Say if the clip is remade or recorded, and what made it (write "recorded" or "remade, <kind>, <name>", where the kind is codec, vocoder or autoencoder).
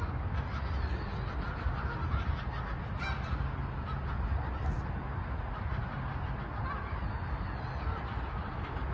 recorded